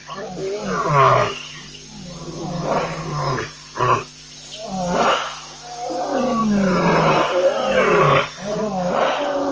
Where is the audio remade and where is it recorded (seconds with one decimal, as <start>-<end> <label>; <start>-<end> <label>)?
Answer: 0.0-9.5 recorded